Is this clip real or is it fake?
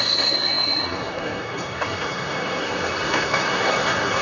fake